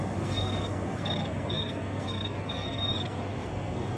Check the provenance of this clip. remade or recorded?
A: remade